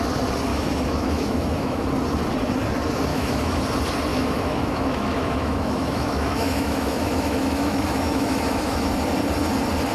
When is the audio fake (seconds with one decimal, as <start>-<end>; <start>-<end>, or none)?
0.5-1.9; 3.1-3.6; 4.1-8.9